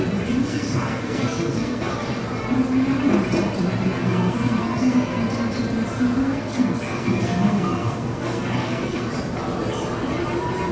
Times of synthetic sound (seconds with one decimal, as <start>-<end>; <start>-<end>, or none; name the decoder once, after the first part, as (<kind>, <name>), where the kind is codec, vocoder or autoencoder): 0.4-1.9 (codec, SNAC); 4.0-5.2; 6.2-9.1